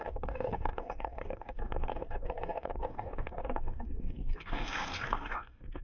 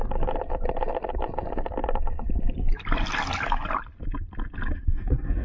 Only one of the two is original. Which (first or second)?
second